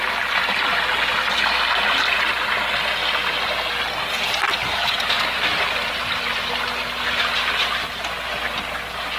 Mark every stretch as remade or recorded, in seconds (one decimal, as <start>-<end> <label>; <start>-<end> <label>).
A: 0.0-9.2 recorded